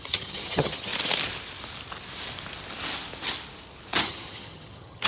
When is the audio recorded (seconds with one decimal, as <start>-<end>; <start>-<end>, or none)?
0.9-4.0